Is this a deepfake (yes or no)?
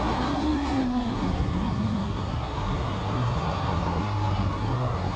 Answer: yes